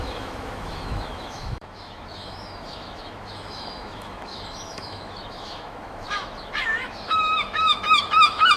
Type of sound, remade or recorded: remade